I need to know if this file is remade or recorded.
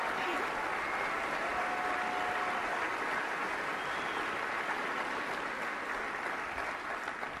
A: recorded